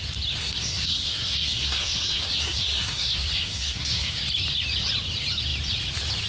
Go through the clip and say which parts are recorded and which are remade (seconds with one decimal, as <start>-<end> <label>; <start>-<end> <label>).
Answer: 0.0-0.4 recorded; 0.4-4.2 remade; 4.2-6.3 recorded